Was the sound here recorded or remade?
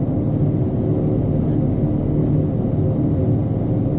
recorded